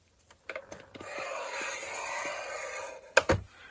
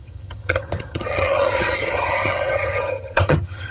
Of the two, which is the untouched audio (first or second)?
first